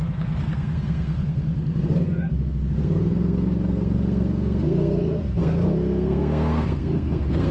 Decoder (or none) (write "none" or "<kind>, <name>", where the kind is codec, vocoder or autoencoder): codec, SNAC